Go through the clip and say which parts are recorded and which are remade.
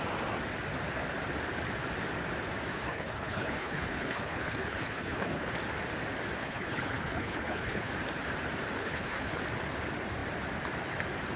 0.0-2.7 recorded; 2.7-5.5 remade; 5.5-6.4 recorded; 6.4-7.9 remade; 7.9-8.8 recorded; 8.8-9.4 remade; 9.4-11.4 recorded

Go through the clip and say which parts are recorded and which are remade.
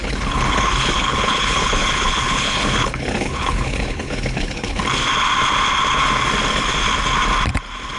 0.0-4.8 remade; 4.8-8.0 recorded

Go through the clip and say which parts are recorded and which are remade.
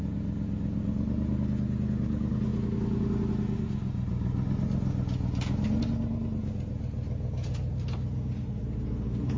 0.0-9.4 recorded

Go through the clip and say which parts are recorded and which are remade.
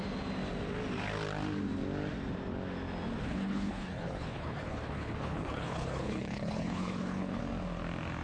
0.0-3.2 recorded; 3.2-7.4 remade; 7.4-8.2 recorded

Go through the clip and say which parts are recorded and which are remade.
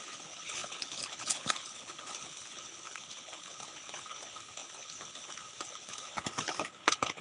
0.0-7.2 remade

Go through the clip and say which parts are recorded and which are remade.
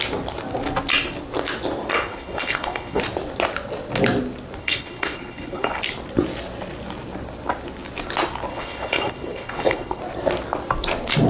0.0-1.9 recorded; 1.9-3.0 remade; 3.0-4.6 recorded; 4.6-5.8 remade; 5.8-8.5 recorded; 8.5-10.0 remade; 10.0-11.3 recorded